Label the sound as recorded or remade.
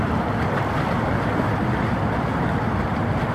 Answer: recorded